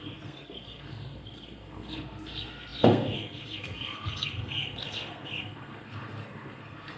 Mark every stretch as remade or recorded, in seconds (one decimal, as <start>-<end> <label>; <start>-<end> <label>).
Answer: 0.0-7.0 remade